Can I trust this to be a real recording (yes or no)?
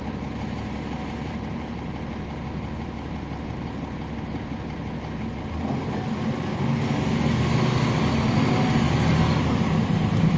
yes